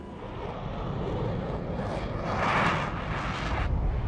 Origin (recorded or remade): recorded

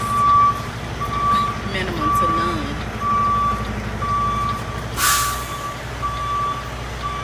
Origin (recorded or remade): recorded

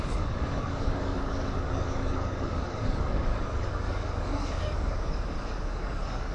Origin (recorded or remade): remade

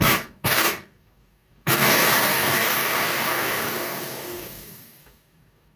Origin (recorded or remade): remade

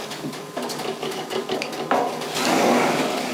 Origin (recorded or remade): remade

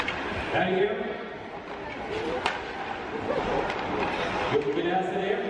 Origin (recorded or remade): recorded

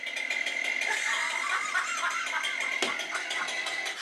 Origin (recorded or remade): recorded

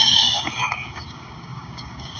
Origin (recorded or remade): remade